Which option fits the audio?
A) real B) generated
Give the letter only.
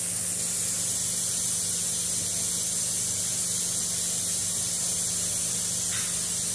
A